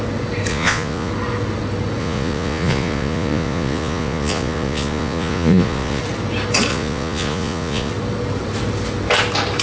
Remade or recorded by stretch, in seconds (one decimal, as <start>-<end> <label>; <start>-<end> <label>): 0.0-0.5 recorded; 0.5-1.1 remade; 1.1-2.0 recorded; 2.0-6.0 remade; 6.0-6.7 recorded; 6.7-7.9 remade; 7.9-9.6 recorded